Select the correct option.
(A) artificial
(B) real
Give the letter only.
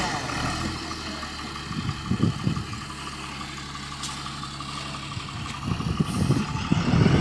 B